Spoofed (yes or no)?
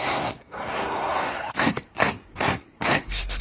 yes